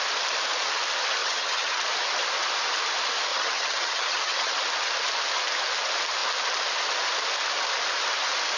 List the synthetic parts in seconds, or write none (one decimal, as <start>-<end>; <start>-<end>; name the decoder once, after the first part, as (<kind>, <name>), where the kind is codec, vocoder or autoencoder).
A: 1.2-1.8 (vocoder, HiFi-GAN); 3.3-4.6